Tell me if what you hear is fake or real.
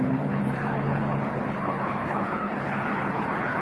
fake